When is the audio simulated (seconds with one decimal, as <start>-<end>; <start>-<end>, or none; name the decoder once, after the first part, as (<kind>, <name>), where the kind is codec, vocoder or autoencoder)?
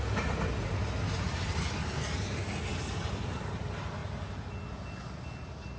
none